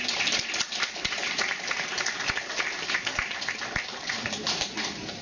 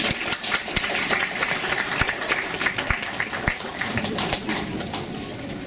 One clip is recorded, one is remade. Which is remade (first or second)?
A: second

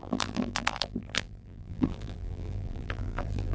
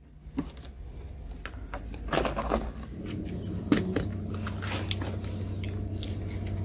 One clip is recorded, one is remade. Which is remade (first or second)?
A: first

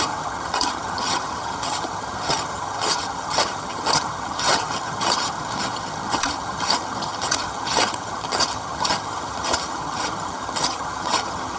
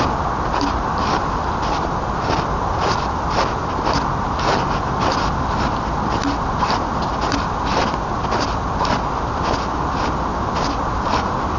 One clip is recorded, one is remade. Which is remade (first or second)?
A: first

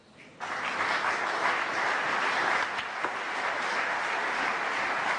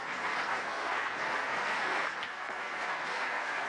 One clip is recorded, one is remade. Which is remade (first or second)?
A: second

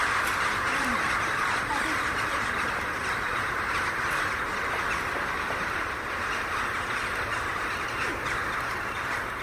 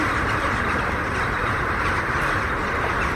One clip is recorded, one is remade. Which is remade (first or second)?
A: second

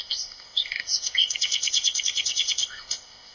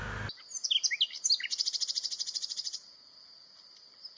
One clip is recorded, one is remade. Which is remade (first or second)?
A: first